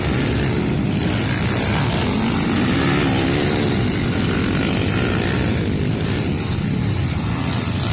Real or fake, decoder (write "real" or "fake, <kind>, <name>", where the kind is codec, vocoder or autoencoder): real